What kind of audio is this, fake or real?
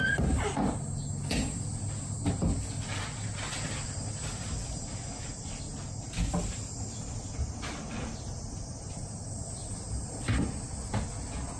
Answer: real